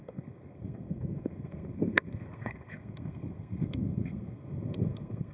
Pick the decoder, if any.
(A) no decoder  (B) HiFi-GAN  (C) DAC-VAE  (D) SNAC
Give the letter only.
D